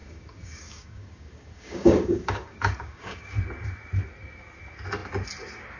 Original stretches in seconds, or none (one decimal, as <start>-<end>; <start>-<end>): 3.3-5.8